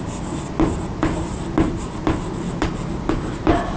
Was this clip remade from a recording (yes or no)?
no